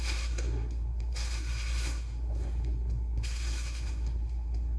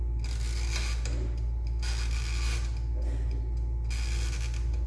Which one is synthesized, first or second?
first